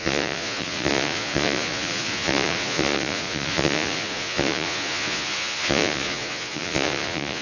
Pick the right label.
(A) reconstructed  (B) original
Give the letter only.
A